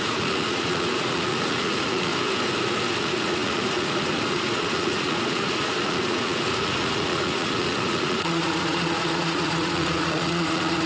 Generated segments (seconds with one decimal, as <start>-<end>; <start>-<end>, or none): 0.0-2.1; 3.0-10.9